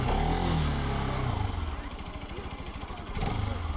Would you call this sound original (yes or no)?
yes